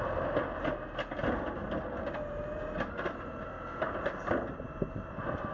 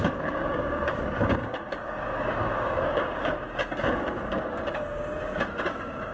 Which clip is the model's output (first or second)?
second